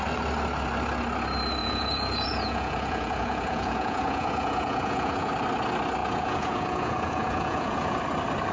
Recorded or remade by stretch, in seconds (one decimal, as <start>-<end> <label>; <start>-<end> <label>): 0.0-1.6 recorded; 1.6-5.3 remade; 5.3-6.0 recorded; 6.0-8.0 remade; 8.0-8.5 recorded